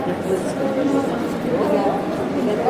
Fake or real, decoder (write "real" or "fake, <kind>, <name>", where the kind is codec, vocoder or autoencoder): real